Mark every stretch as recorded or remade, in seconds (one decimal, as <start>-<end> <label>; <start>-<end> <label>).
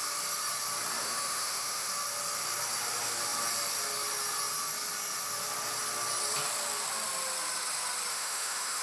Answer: 0.0-1.0 recorded; 1.0-1.9 remade; 1.9-8.1 recorded; 8.1-8.8 remade